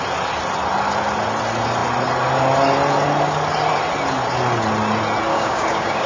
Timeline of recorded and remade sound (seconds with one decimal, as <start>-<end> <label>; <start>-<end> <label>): 0.0-5.3 recorded; 5.3-6.1 remade